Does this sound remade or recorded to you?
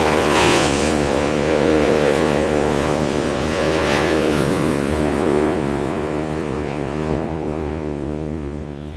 remade